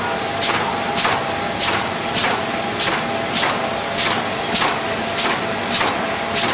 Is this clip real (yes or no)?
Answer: yes